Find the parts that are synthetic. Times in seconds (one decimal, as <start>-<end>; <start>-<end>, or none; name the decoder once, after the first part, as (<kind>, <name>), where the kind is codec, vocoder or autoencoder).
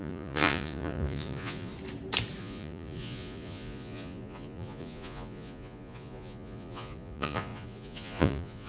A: 0.0-1.7 (vocoder, Vocos); 2.4-8.7